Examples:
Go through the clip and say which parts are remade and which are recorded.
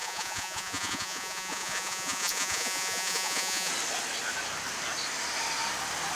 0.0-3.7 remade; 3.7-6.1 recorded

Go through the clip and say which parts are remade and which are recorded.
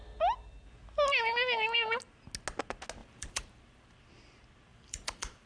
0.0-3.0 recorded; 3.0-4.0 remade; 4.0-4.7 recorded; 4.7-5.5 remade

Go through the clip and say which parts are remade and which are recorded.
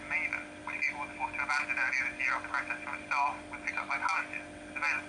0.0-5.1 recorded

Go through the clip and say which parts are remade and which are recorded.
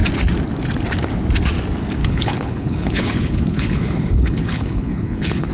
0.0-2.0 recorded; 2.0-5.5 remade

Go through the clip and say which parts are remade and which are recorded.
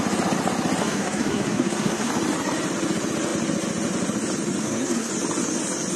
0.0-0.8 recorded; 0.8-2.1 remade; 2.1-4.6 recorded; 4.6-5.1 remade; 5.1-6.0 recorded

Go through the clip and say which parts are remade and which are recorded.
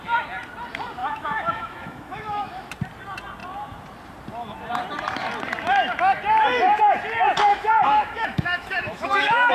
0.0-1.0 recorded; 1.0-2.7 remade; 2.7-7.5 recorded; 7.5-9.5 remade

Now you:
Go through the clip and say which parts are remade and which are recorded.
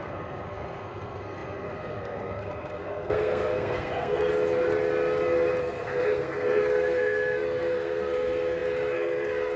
0.0-4.3 remade; 4.3-5.6 recorded; 5.6-9.6 remade